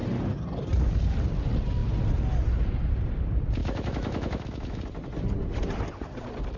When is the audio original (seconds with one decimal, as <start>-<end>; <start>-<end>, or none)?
0.0-3.6; 4.8-6.6